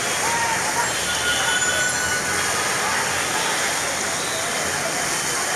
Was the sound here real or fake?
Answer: real